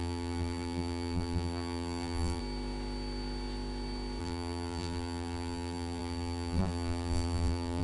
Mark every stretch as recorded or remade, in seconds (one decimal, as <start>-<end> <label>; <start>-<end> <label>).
0.0-2.4 remade; 2.4-4.2 recorded; 4.2-7.8 remade